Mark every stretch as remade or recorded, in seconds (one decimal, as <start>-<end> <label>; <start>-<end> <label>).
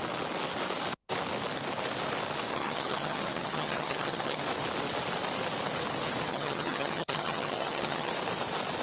0.0-2.5 recorded; 2.5-4.4 remade; 4.4-6.3 recorded; 6.3-8.1 remade; 8.1-8.8 recorded